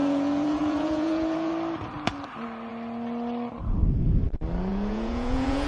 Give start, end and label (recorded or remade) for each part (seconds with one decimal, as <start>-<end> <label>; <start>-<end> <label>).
0.0-1.5 remade; 1.5-4.7 recorded; 4.7-5.7 remade